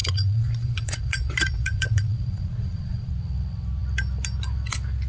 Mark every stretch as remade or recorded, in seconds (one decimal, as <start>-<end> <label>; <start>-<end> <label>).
0.0-3.1 remade; 3.1-5.1 recorded